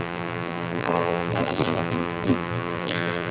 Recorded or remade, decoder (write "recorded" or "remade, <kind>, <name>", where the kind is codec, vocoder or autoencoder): remade, vocoder, BigVGAN v2